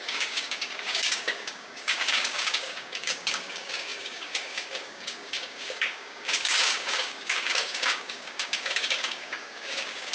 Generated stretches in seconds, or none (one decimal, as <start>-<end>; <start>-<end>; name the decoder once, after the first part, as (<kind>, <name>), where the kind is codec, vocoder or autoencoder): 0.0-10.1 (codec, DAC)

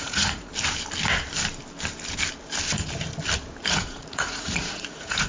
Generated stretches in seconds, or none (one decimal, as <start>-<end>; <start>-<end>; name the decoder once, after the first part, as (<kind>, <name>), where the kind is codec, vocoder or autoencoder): 0.0-0.5 (vocoder, Vocos); 3.7-5.3

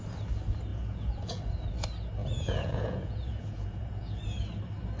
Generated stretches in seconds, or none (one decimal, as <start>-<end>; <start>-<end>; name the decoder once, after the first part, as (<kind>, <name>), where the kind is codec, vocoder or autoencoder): 0.7-1.4 (vocoder, Vocos); 2.2-4.2

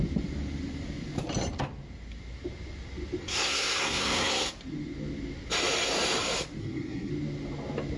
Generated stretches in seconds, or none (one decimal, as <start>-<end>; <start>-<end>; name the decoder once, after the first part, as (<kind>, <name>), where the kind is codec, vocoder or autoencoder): 3.2-4.5 (codec, SNAC); 6.6-7.1